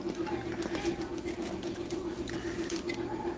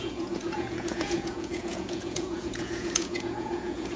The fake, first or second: second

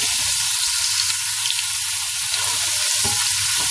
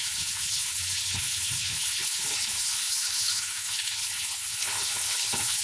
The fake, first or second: second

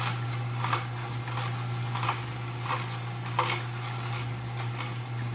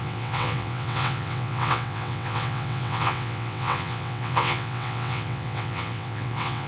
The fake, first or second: second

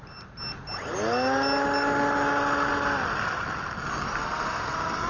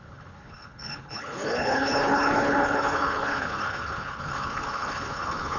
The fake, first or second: second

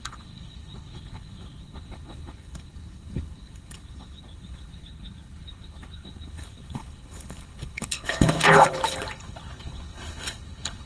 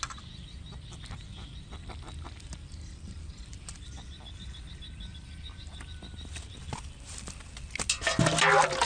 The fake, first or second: first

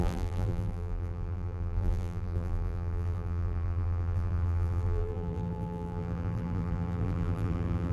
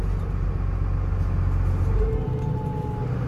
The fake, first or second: first